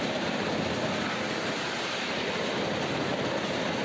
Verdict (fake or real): real